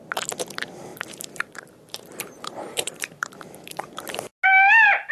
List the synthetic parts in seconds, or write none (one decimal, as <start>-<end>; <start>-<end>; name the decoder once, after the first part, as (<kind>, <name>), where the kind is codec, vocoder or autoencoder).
0.9-4.0 (vocoder, BigVGAN v2)